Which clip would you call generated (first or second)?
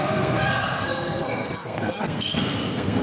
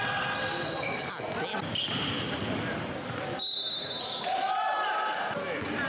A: first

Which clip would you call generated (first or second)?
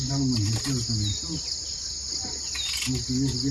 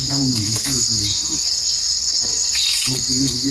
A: second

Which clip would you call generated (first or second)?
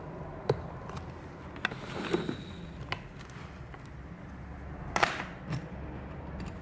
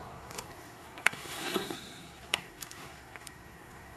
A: second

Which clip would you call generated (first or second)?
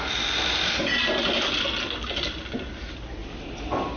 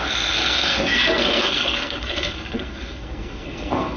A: second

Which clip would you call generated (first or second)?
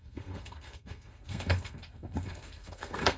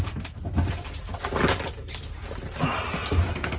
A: first